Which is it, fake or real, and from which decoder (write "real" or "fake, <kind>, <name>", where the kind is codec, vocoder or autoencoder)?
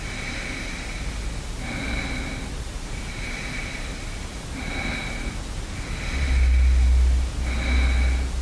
real